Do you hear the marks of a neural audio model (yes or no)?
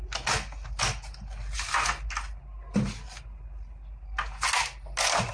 no